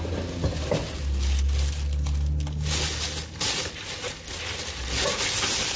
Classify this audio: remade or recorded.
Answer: recorded